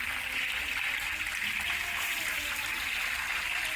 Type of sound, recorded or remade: recorded